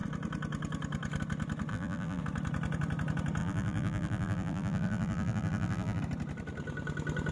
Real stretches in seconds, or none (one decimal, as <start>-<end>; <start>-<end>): 0.0-1.7; 2.2-3.4; 6.0-7.3